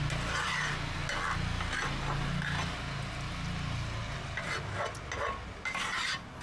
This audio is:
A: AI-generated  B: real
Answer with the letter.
B